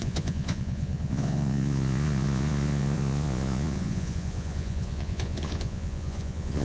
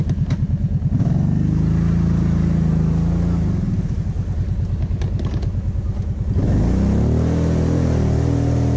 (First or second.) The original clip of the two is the second